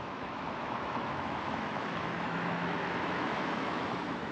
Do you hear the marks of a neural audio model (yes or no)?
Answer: yes